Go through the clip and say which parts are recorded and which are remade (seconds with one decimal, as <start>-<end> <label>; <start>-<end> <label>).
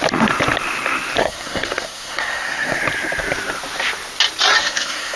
0.0-1.2 recorded; 1.2-2.8 remade; 2.8-4.6 recorded; 4.6-5.2 remade